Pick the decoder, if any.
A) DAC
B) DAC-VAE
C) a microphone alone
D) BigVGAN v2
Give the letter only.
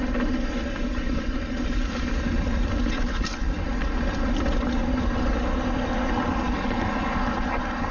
C